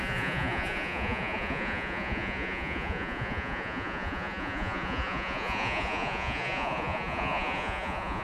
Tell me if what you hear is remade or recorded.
remade